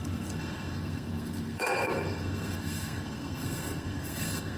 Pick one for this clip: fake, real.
fake